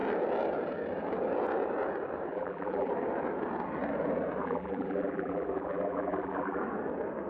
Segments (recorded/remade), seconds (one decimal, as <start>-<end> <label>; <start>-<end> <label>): 0.0-2.3 recorded; 2.3-2.9 remade; 2.9-4.4 recorded; 4.4-6.6 remade; 6.6-7.3 recorded